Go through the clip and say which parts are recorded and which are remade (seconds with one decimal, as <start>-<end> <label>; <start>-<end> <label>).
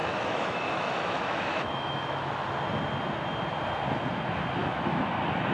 0.0-2.3 remade; 2.3-4.6 recorded; 4.6-5.1 remade; 5.1-5.5 recorded